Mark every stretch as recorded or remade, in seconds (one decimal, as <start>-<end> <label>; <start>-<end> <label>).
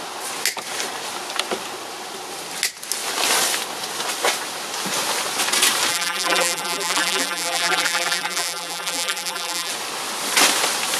0.0-5.9 recorded; 5.9-9.7 remade; 9.7-11.0 recorded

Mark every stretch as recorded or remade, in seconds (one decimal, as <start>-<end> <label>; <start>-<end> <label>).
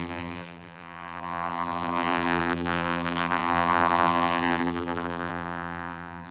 0.0-6.3 remade